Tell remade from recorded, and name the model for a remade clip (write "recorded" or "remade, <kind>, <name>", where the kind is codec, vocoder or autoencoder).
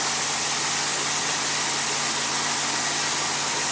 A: recorded